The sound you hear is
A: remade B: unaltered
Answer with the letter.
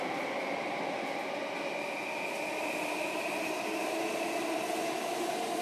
B